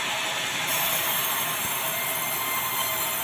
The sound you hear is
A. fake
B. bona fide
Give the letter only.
B